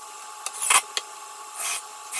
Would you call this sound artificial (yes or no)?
no